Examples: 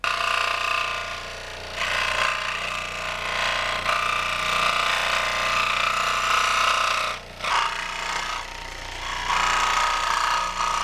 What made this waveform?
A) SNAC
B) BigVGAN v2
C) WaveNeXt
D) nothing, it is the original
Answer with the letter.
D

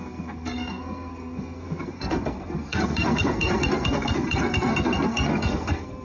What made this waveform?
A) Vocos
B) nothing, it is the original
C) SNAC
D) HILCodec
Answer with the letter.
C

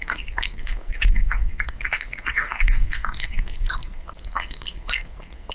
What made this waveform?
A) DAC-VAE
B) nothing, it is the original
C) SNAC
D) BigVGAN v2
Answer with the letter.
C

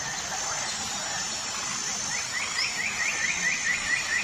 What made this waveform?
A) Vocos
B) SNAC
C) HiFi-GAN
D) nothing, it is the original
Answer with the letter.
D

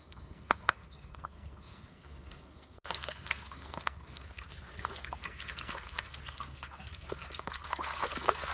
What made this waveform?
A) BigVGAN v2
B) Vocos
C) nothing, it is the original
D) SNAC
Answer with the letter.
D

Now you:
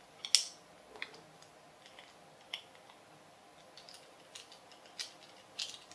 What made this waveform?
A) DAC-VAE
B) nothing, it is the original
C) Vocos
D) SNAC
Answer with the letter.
B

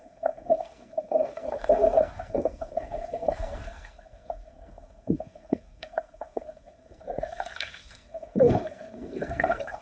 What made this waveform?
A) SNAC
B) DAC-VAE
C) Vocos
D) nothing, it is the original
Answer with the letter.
A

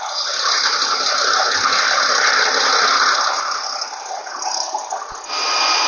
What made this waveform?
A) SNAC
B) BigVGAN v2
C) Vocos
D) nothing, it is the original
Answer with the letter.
D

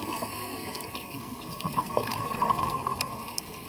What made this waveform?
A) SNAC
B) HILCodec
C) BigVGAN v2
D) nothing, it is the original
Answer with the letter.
A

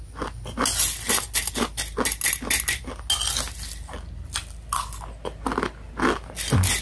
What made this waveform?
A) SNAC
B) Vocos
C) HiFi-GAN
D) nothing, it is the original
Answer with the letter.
D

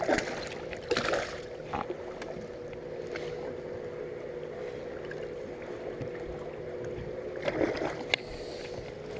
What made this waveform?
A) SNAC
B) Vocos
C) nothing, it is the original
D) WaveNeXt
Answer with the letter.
C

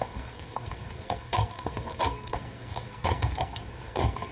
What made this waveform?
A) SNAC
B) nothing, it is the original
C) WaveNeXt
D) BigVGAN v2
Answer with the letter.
A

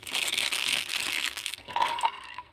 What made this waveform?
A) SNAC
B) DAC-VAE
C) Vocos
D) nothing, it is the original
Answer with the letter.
A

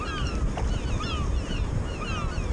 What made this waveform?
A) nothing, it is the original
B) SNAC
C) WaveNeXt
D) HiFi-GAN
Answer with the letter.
A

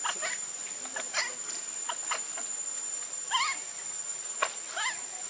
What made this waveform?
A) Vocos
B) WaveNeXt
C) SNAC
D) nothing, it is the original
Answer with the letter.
D